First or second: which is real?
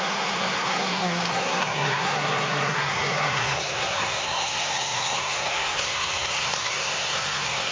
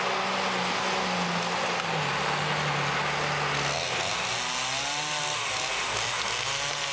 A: second